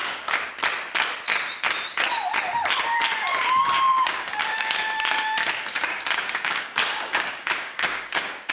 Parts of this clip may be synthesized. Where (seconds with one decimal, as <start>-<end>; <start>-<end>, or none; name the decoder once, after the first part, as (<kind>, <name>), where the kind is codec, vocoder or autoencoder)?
0.0-0.5 (codec, DAC); 3.3-8.5